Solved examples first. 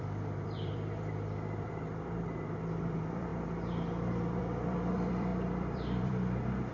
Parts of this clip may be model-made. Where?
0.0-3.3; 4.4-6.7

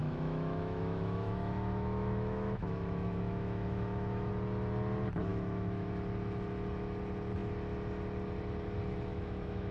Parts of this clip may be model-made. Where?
0.0-4.3; 5.3-5.9; 9.1-9.7

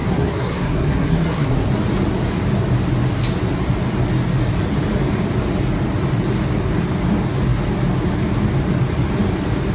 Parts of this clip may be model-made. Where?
0.0-1.7

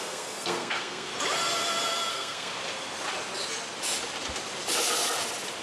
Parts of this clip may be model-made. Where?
0.0-1.1; 2.1-2.5

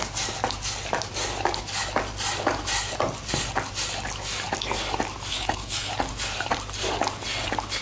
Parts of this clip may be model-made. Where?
5.3-5.9